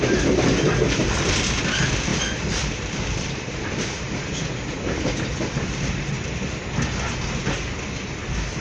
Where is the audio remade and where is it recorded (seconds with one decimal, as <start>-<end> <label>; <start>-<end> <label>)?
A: 0.0-2.1 recorded; 2.1-6.3 remade; 6.3-8.6 recorded